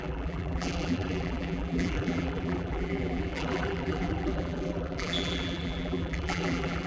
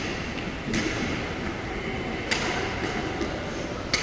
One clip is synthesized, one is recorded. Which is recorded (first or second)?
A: second